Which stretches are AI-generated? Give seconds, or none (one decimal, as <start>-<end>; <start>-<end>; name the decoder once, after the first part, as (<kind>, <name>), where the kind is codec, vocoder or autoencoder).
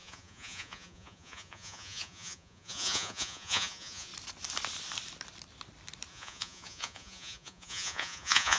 0.0-4.1 (vocoder, Vocos); 6.1-8.6